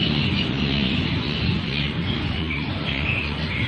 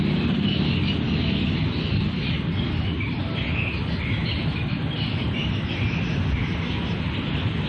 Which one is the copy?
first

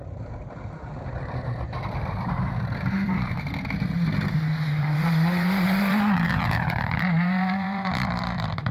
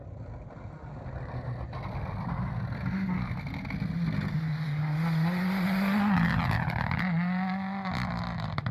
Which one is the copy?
first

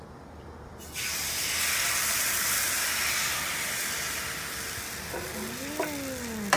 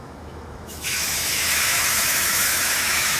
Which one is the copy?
second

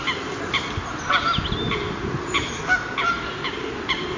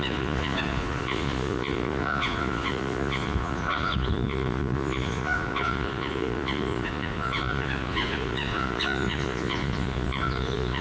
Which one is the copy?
second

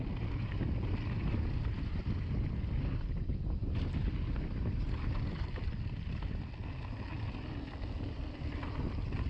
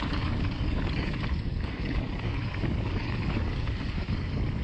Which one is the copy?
second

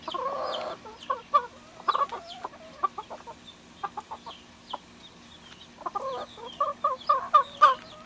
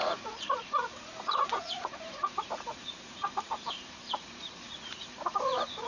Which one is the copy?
second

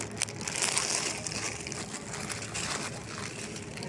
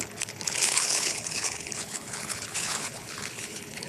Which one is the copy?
second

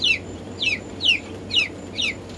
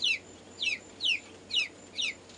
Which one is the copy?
first